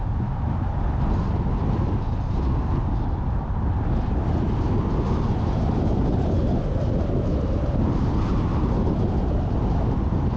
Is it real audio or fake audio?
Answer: real